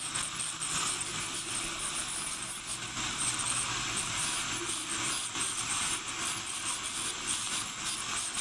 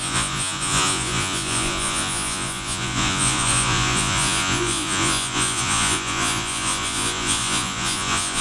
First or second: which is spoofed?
second